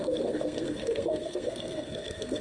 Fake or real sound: fake